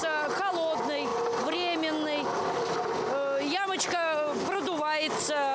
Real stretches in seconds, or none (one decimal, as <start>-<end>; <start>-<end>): 0.0-5.5